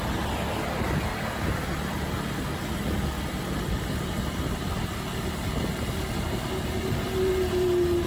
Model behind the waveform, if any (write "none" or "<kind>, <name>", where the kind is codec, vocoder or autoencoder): none